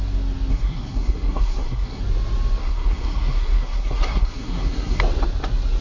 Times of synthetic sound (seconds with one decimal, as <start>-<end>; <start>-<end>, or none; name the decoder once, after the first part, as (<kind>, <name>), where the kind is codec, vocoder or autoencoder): 0.5-2.0 (codec, SNAC); 2.6-5.0